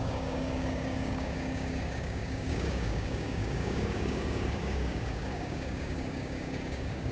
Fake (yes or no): yes